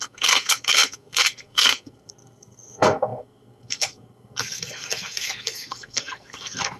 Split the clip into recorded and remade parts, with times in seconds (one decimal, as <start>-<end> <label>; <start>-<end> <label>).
0.0-6.8 remade